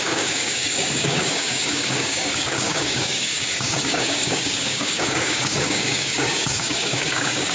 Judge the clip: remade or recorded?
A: remade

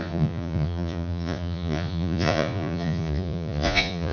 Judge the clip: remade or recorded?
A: remade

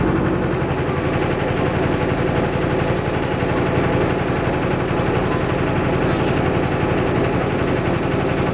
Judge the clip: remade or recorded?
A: recorded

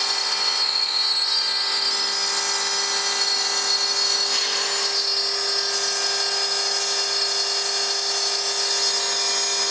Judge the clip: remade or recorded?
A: recorded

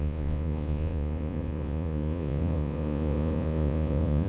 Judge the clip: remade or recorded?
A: remade